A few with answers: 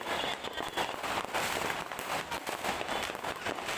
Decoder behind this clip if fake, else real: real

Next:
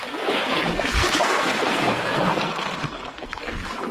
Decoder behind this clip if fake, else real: fake, codec, SNAC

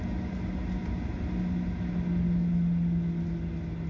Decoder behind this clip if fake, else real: real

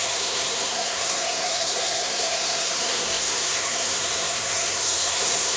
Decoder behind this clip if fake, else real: fake, codec, SNAC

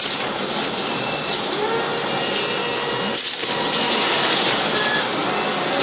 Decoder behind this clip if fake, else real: real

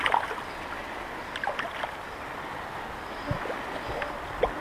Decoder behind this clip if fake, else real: real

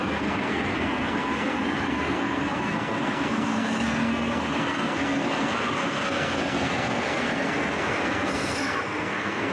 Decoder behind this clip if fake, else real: fake, codec, SNAC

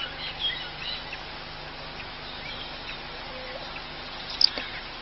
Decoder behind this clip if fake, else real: real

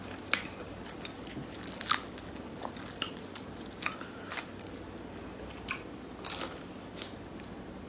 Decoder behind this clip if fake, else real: real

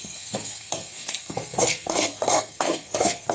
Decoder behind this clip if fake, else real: fake, codec, SNAC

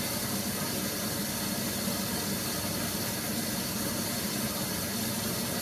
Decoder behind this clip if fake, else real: real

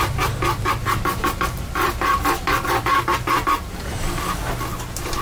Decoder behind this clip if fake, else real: real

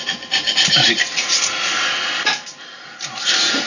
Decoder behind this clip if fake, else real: real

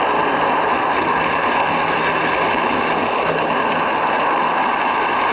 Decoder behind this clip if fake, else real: real